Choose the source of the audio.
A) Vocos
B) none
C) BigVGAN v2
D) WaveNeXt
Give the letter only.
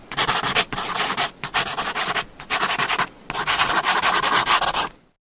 B